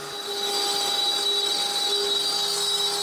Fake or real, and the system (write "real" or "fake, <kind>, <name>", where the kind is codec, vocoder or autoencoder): real